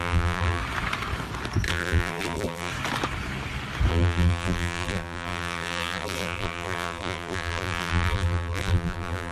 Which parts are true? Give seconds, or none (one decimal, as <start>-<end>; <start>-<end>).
0.6-1.7; 2.7-3.9